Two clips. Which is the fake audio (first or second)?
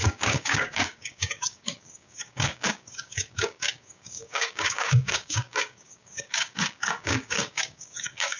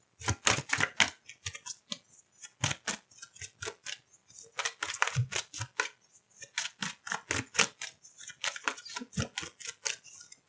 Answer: first